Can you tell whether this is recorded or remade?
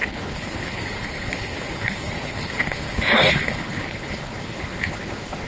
remade